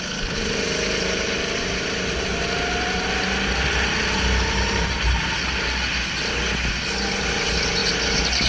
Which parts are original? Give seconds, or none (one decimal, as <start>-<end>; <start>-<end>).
0.0-8.5